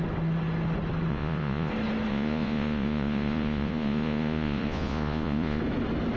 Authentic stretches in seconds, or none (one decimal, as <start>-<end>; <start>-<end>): 0.0-1.1; 1.7-2.1; 5.6-6.2